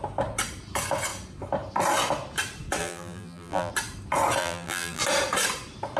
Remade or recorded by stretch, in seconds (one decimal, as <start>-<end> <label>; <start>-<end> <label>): 0.0-2.8 recorded; 2.8-3.7 remade; 3.7-4.4 recorded; 4.4-5.0 remade; 5.0-6.0 recorded